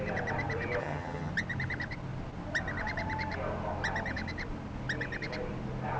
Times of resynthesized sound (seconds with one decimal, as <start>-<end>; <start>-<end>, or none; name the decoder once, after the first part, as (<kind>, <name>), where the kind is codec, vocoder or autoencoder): 0.8-1.3 (vocoder, HiFi-GAN)